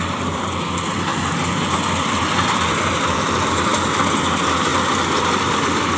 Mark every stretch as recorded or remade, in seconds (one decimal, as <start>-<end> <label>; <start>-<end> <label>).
0.0-4.7 remade; 4.7-5.5 recorded; 5.5-6.0 remade